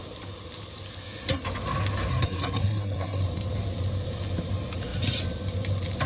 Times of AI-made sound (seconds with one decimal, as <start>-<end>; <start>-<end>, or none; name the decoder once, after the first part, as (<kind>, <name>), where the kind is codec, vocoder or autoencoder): 2.1-3.2 (codec, SNAC)